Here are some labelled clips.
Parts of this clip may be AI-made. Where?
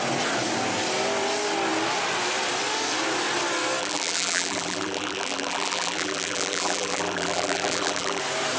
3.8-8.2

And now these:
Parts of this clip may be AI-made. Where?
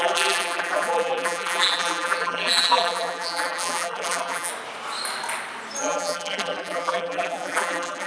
0.0-4.5; 5.8-8.1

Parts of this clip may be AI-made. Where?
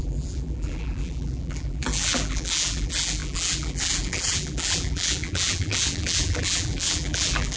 0.0-7.6